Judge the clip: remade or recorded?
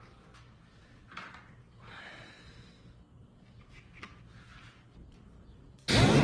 recorded